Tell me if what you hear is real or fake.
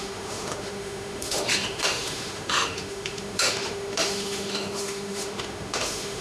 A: fake